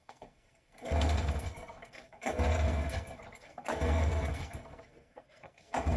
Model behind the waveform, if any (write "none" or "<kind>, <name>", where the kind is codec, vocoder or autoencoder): codec, SNAC